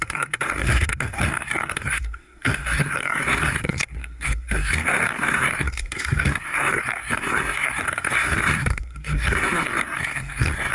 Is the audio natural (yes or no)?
no